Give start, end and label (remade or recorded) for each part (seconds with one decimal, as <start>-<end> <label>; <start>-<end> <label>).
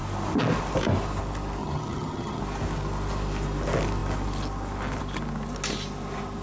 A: 0.0-1.6 recorded; 1.6-2.4 remade; 2.4-6.4 recorded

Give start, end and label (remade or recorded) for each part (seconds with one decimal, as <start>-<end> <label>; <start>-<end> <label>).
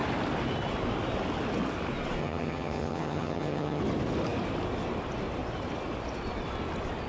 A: 0.0-2.2 recorded; 2.2-3.8 remade; 3.8-7.1 recorded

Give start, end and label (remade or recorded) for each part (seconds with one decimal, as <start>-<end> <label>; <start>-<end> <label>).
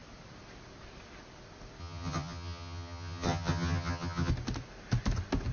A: 0.0-1.8 recorded; 1.8-4.3 remade; 4.3-5.5 recorded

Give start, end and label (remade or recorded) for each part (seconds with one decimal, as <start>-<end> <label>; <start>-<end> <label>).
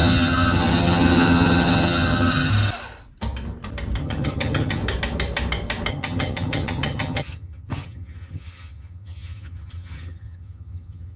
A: 0.0-2.5 remade; 2.5-4.0 recorded; 4.0-4.8 remade; 4.8-5.9 recorded; 5.9-11.2 remade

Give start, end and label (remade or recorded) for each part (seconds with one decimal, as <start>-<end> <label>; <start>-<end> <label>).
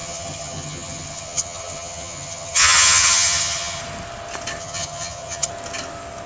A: 0.0-3.8 remade; 3.8-4.6 recorded; 4.6-5.5 remade; 5.5-6.3 recorded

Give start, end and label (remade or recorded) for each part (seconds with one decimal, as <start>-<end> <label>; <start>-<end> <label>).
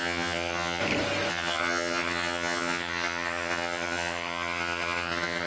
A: 0.0-0.8 remade; 0.8-1.3 recorded; 1.3-5.5 remade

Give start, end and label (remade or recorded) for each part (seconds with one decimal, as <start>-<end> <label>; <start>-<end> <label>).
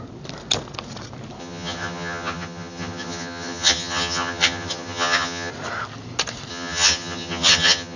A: 0.0-1.4 recorded; 1.4-5.5 remade; 5.5-6.5 recorded; 6.5-8.0 remade